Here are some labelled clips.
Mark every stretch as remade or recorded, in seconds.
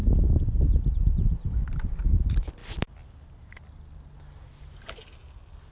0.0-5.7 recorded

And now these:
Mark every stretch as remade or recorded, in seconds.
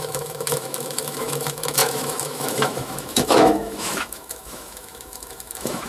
0.0-5.9 remade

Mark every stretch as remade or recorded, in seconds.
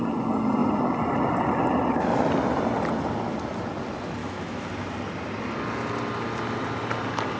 0.0-4.2 recorded; 4.2-4.7 remade; 4.7-7.4 recorded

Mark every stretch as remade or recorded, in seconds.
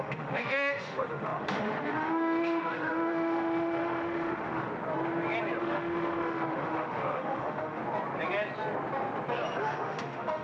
0.0-4.7 remade; 4.7-5.6 recorded; 5.6-7.8 remade; 7.8-9.6 recorded; 9.6-10.4 remade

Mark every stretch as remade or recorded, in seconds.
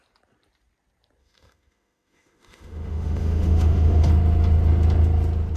0.0-1.2 recorded; 1.2-4.1 remade; 4.1-5.6 recorded